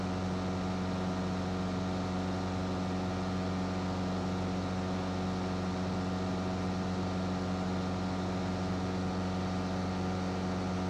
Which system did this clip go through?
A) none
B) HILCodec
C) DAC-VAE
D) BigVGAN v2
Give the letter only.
A